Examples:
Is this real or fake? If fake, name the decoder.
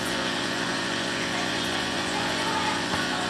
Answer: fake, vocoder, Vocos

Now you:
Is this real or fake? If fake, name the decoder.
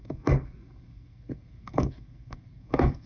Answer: fake, codec, SNAC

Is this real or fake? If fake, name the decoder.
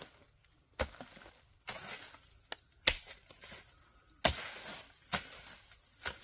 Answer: real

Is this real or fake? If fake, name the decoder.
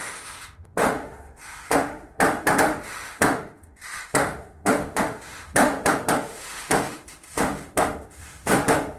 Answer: fake, autoencoder, DAC-VAE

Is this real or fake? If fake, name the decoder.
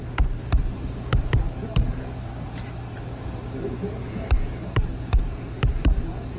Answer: fake, vocoder, BigVGAN v2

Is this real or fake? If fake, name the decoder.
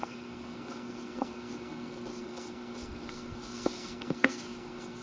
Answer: fake, codec, SNAC